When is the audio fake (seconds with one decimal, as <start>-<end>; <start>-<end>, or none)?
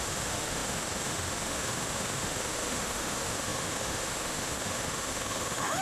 0.0-5.8